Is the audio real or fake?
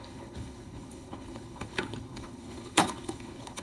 fake